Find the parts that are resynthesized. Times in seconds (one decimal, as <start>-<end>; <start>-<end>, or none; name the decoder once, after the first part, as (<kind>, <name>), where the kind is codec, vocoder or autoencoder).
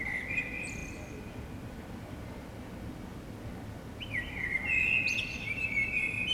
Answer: none